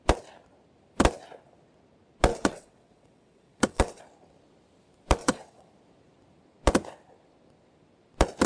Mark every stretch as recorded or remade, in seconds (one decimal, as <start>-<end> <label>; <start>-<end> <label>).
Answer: 0.0-2.3 recorded; 2.3-4.0 remade; 4.0-5.2 recorded; 5.2-5.7 remade; 5.7-8.5 recorded